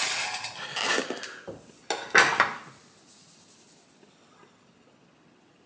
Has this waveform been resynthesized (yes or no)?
no